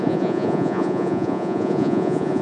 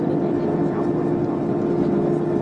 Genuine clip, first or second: second